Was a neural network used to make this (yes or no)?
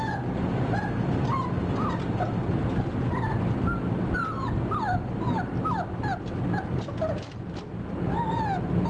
no